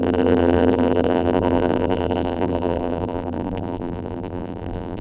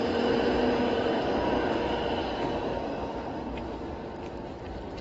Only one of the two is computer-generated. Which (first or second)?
first